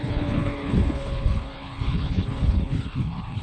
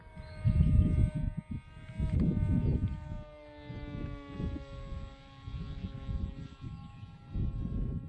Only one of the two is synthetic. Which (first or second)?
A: first